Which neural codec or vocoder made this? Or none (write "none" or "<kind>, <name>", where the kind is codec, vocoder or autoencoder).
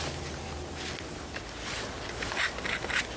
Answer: none